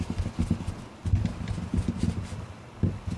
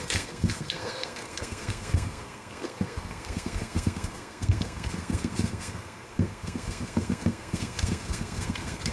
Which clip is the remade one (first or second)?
second